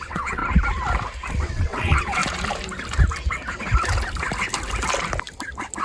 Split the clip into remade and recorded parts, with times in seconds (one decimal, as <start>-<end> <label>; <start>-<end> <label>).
0.0-0.4 remade; 0.4-1.3 recorded; 1.3-2.2 remade; 2.2-5.8 recorded